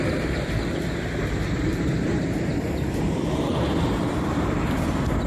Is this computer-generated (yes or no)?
yes